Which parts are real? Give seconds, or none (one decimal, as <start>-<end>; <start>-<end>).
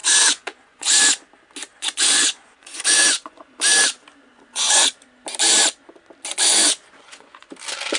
1.0-1.7; 3.5-4.3; 4.9-6.3; 7.5-8.0